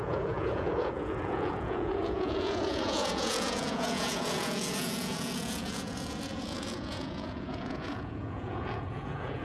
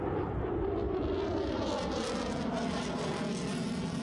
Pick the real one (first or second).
second